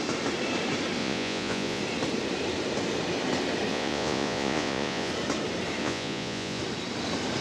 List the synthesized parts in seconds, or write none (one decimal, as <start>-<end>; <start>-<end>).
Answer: 1.0-1.8; 3.7-5.1; 5.8-6.6